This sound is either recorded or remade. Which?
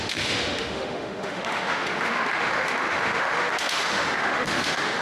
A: remade